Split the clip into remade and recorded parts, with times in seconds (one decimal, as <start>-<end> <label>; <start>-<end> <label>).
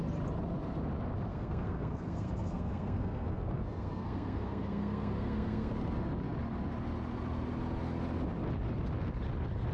0.0-1.3 recorded; 1.3-5.7 remade; 5.7-9.7 recorded